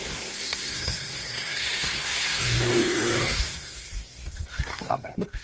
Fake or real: fake